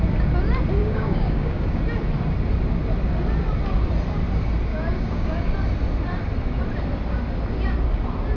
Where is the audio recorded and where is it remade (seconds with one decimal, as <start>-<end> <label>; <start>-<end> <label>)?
0.0-0.8 recorded; 0.8-1.8 remade; 1.8-4.7 recorded; 4.7-5.5 remade; 5.5-8.4 recorded